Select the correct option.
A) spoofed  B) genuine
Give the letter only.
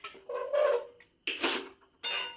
B